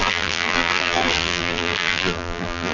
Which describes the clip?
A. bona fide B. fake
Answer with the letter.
B